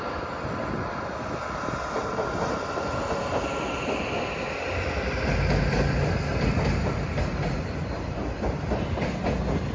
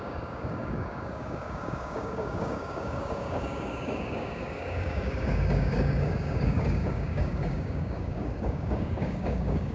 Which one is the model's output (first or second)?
second